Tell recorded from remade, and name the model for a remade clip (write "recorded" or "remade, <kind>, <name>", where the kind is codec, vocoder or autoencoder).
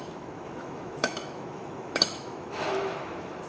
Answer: remade, autoencoder, DAC-VAE